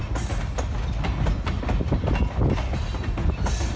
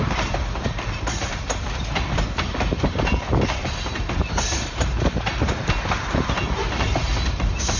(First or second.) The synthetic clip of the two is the second